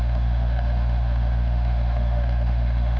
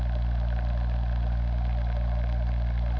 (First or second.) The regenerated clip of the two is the first